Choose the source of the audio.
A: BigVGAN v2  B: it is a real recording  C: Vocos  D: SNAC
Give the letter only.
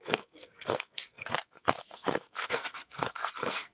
D